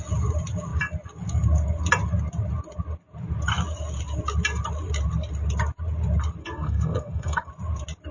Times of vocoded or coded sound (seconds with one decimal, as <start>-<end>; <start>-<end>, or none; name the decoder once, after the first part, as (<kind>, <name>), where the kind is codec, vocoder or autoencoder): 6.4-7.5 (codec, SNAC)